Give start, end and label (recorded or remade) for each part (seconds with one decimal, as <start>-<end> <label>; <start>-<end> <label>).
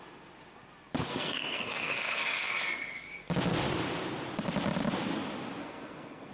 0.0-1.1 recorded; 1.1-3.3 remade; 3.3-5.6 recorded; 5.6-6.3 remade